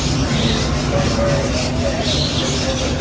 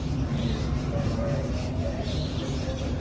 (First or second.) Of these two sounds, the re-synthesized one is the second